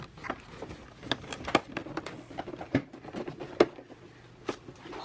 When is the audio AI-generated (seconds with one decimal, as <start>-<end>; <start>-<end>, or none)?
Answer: none

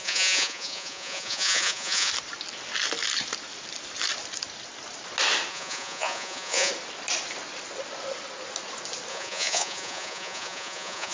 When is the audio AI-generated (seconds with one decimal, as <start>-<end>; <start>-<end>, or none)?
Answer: 0.0-2.1; 5.5-6.7; 9.1-11.1

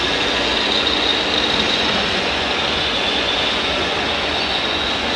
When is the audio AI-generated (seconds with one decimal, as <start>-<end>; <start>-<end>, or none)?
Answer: 0.0-1.1; 1.7-5.2

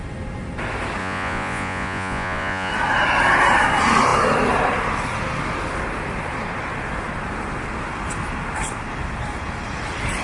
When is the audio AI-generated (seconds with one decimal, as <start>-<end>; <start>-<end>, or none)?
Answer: 1.0-2.7

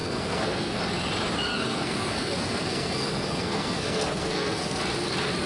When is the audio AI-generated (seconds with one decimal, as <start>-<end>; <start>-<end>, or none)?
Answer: 0.0-0.8; 1.5-4.8

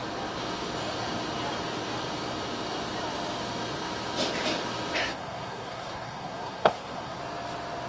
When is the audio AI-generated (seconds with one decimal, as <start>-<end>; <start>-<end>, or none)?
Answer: 5.0-7.2